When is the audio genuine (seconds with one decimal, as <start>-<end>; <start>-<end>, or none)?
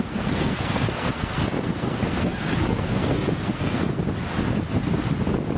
4.0-5.6